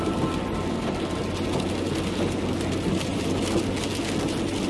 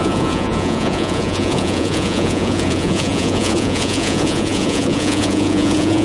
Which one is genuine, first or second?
first